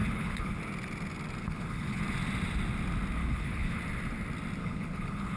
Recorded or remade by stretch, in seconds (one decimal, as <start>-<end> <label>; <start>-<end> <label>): 0.0-0.6 remade; 0.6-1.4 recorded; 1.4-2.0 remade; 2.0-3.2 recorded; 3.2-3.8 remade; 3.8-4.6 recorded; 4.6-5.4 remade

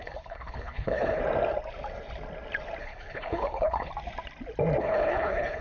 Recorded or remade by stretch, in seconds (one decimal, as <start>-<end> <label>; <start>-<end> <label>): 0.0-1.2 remade; 1.2-2.8 recorded; 2.8-3.9 remade; 3.9-4.8 recorded; 4.8-5.6 remade

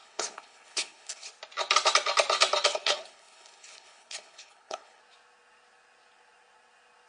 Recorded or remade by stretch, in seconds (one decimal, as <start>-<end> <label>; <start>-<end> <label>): 0.0-1.3 remade; 1.3-2.7 recorded; 2.7-5.0 remade; 5.0-7.1 recorded

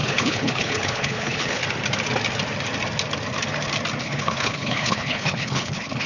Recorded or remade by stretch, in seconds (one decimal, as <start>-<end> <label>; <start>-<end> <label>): 0.0-1.6 remade; 1.6-4.0 recorded; 4.0-6.1 remade

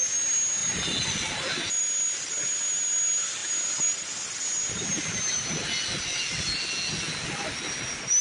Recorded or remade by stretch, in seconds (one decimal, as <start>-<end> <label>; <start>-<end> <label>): 0.0-8.2 recorded

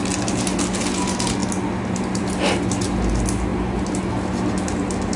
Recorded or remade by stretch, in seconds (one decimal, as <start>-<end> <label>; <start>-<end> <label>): 0.0-5.2 recorded

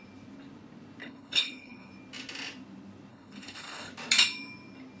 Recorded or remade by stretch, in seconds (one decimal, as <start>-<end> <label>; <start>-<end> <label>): 0.0-1.0 recorded; 1.0-1.9 remade; 1.9-3.1 recorded; 3.1-3.9 remade; 3.9-5.0 recorded